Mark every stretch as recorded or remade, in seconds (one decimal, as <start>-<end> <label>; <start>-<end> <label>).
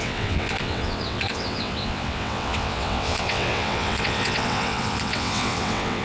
0.0-6.0 remade